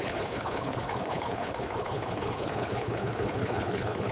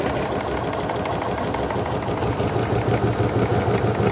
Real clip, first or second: second